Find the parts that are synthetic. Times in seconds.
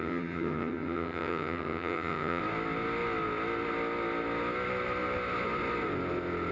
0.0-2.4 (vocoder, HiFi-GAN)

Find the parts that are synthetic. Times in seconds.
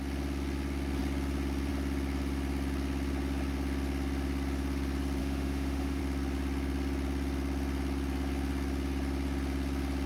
5.2-6.0 (autoencoder, DAC-VAE)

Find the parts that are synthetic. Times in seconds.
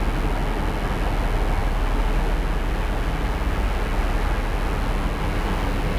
none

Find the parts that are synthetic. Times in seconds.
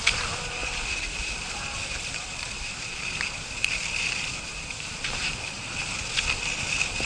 0.0-4.3 (vocoder, BigVGAN v2)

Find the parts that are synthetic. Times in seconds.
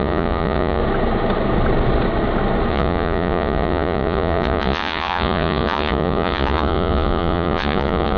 0.0-0.8 (vocoder, Vocos); 2.7-8.2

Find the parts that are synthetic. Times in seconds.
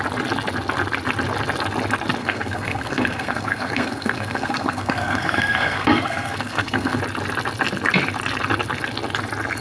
2.2-7.0 (codec, SNAC)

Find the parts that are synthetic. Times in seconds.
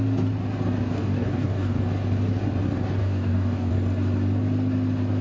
0.9-1.8 (codec, DAC); 3.0-3.7